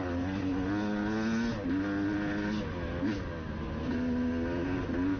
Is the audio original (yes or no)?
yes